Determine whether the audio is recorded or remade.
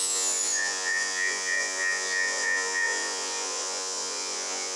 remade